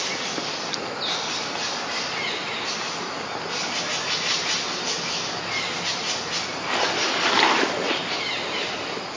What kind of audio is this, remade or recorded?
recorded